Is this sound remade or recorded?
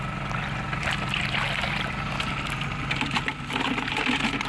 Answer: recorded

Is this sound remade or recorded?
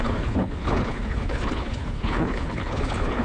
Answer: remade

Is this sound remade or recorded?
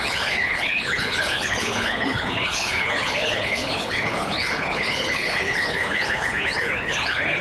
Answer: remade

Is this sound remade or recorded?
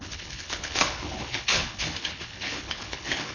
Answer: remade